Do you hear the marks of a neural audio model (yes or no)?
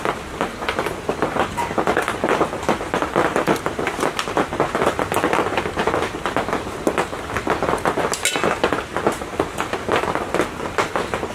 no